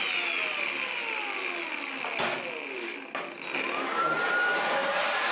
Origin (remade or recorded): recorded